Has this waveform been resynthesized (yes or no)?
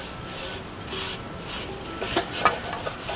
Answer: no